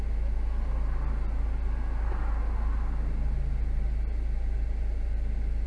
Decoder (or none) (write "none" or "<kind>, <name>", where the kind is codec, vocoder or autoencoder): none